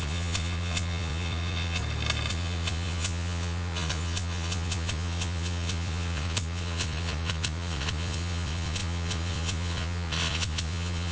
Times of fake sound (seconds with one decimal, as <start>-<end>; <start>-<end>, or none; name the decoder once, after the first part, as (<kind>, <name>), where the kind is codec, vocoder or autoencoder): 0.0-1.8 (vocoder, Vocos); 2.3-11.1